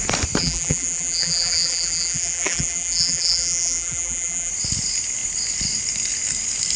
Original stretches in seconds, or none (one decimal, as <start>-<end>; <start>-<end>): 0.0-0.4; 4.5-6.8